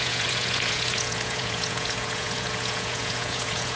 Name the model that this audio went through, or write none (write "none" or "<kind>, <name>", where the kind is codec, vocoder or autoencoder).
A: vocoder, Vocos